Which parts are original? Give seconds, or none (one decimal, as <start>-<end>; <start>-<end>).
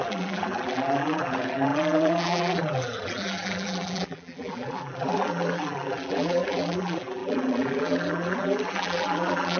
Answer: none